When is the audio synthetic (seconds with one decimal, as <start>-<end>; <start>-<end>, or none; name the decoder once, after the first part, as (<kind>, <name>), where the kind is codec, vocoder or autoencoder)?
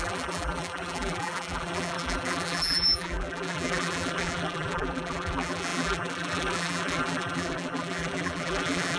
0.0-9.0 (vocoder, BigVGAN v2)